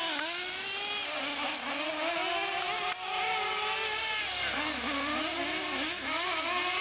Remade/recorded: recorded